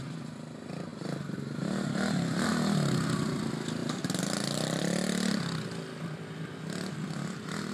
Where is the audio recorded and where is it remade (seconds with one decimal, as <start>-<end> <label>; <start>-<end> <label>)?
0.0-0.9 recorded; 0.9-2.5 remade; 2.5-3.8 recorded; 3.8-4.8 remade; 4.8-7.7 recorded